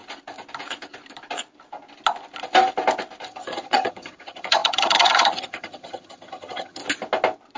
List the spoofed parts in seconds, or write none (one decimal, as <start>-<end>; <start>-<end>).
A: 3.3-6.8